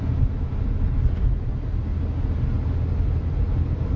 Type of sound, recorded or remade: recorded